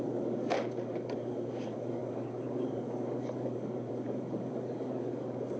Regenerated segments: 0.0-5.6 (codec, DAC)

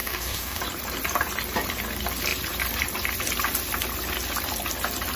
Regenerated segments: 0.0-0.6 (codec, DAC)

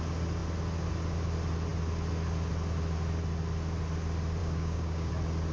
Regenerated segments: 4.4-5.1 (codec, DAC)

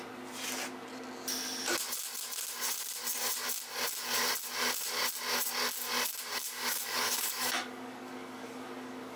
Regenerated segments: 6.4-9.2 (codec, DAC)

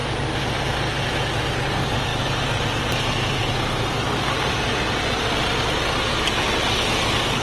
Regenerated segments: none